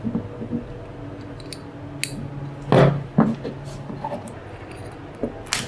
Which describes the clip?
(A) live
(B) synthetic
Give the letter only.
A